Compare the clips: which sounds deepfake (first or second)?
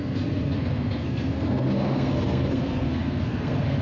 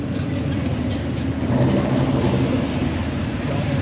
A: first